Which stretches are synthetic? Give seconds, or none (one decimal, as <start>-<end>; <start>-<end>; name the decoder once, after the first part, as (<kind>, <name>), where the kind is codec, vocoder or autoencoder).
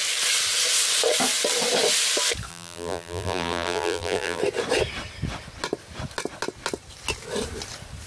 2.5-4.4 (vocoder, BigVGAN v2)